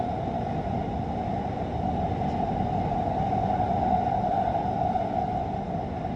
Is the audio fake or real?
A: real